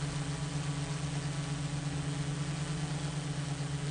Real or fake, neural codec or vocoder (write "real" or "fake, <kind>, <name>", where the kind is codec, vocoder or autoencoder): real